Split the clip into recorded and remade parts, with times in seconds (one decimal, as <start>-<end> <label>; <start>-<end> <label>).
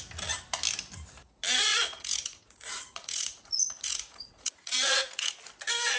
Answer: 0.0-1.7 recorded; 1.7-5.3 remade; 5.3-6.0 recorded